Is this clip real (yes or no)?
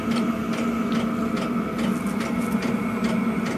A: yes